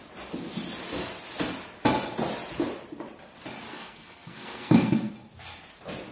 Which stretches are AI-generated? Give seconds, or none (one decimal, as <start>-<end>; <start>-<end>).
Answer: 3.7-5.1